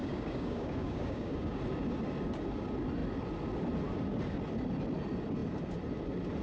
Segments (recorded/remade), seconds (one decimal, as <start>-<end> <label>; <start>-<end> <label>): 0.0-1.6 remade; 1.6-6.4 recorded